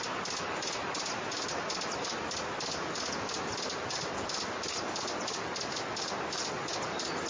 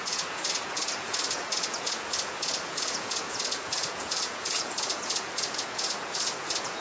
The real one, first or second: first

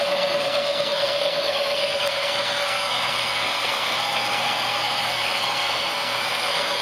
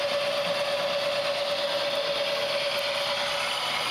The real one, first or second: second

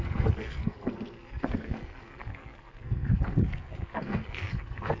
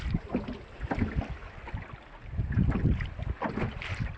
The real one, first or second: second